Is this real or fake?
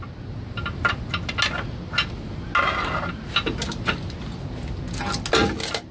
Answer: real